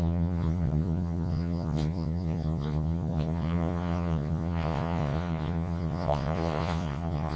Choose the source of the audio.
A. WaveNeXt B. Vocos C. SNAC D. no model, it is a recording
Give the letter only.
B